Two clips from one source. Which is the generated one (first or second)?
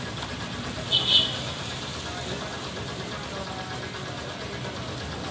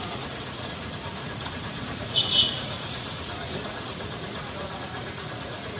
second